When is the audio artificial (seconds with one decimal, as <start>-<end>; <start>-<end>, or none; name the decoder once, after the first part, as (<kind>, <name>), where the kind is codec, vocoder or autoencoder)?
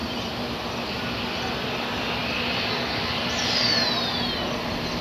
0.0-1.0 (vocoder, BigVGAN v2)